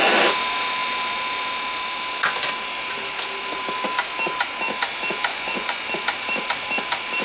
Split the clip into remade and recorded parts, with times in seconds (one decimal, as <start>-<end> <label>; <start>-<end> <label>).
0.0-5.3 recorded; 5.3-5.9 remade; 5.9-7.2 recorded

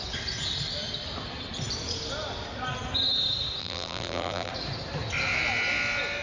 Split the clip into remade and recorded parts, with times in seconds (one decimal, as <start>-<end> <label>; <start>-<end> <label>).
0.0-3.6 recorded; 3.6-4.5 remade; 4.5-6.2 recorded